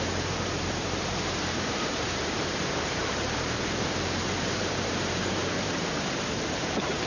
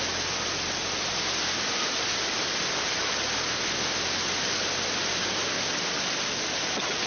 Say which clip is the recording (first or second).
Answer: second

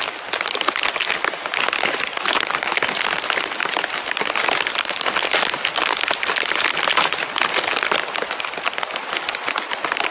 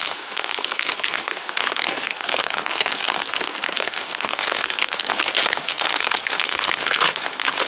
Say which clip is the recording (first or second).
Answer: first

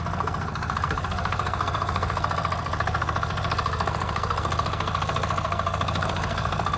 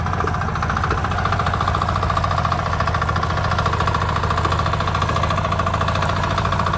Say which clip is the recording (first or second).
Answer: second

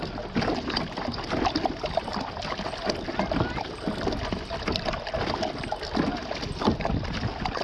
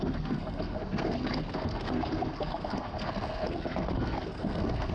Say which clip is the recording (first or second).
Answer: first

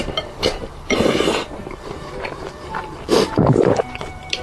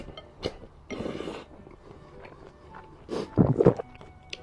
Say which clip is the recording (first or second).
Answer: second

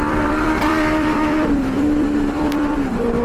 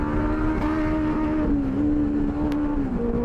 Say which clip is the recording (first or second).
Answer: second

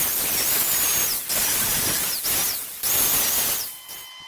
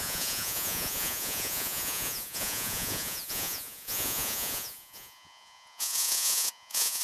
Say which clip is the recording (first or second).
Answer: first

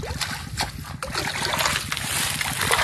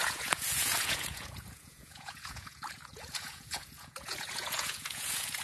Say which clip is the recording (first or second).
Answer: first